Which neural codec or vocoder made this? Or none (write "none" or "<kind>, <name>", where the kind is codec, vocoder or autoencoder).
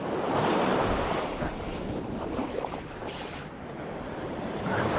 vocoder, BigVGAN v2